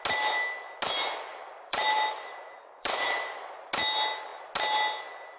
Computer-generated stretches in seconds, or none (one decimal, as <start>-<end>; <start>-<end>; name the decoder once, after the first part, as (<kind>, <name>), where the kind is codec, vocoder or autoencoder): 1.3-3.7 (vocoder, BigVGAN v2)